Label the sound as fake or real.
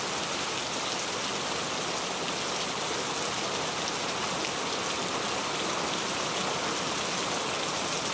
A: real